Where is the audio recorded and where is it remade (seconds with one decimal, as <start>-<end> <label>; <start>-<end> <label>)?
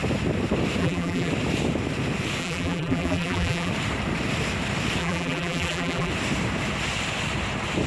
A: 0.0-0.8 recorded; 0.8-1.3 remade; 1.3-2.4 recorded; 2.4-3.7 remade; 3.7-5.0 recorded; 5.0-6.1 remade; 6.1-7.9 recorded